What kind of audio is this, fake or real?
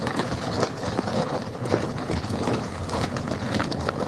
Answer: fake